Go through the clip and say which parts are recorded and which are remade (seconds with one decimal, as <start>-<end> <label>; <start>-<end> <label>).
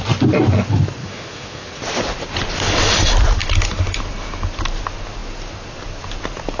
0.0-1.0 recorded; 1.0-1.7 remade; 1.7-6.6 recorded